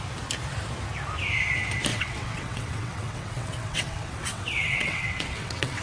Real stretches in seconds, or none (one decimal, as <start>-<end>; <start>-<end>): 0.0-1.9